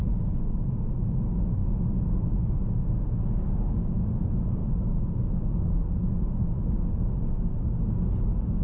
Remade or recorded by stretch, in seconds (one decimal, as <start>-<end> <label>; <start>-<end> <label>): 0.0-4.6 recorded; 4.6-6.0 remade; 6.0-8.6 recorded